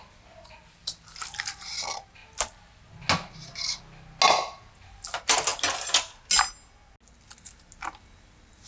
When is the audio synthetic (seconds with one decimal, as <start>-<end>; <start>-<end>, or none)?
none